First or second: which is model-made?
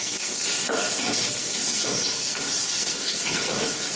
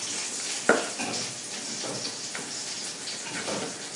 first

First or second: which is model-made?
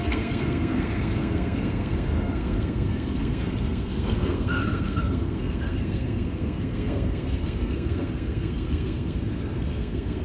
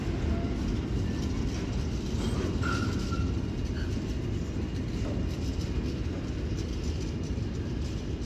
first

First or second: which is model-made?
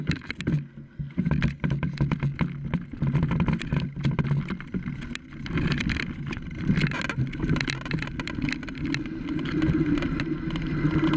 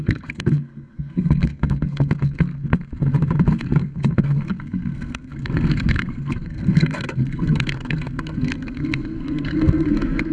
second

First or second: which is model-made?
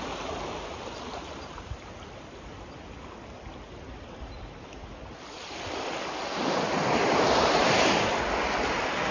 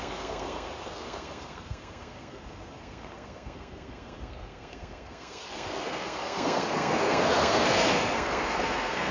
second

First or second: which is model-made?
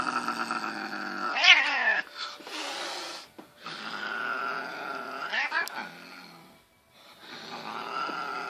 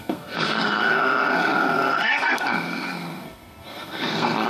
second